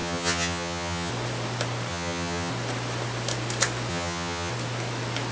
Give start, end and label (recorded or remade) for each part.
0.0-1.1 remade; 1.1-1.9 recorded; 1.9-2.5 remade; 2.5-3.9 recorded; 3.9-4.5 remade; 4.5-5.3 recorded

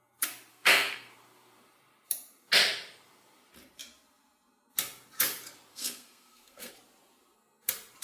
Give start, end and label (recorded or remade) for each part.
0.0-0.5 recorded; 0.5-1.1 remade; 1.1-5.7 recorded; 5.7-6.7 remade; 6.7-8.0 recorded

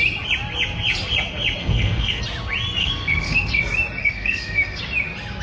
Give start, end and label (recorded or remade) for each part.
0.0-1.6 recorded; 1.6-2.2 remade; 2.2-2.8 recorded; 2.8-3.6 remade; 3.6-4.0 recorded; 4.0-4.8 remade; 4.8-5.4 recorded

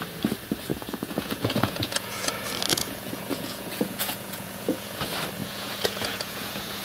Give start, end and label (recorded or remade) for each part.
0.0-0.7 recorded; 0.7-2.3 remade; 2.3-2.7 recorded; 2.7-5.0 remade; 5.0-5.4 recorded; 5.4-6.8 remade

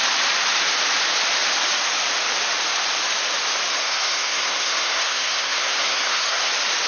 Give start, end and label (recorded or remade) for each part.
0.0-3.7 recorded; 3.7-6.5 remade; 6.5-6.9 recorded

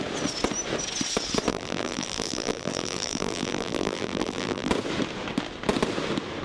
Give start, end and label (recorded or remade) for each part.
0.0-1.5 recorded; 1.5-4.7 remade; 4.7-6.4 recorded